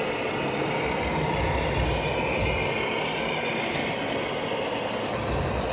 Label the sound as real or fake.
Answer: real